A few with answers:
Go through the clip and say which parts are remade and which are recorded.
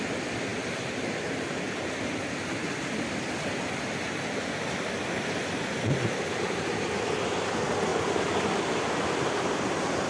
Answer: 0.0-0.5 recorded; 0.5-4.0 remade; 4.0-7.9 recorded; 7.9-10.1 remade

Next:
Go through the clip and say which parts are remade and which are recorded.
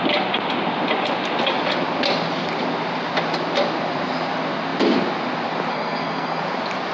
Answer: 0.0-5.7 recorded; 5.7-6.4 remade; 6.4-6.9 recorded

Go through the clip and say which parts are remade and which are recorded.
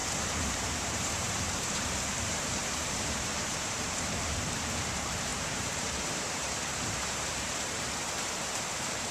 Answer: 0.0-9.1 remade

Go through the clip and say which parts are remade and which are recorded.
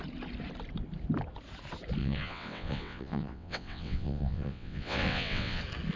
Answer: 0.0-2.0 recorded; 2.0-5.6 remade; 5.6-6.0 recorded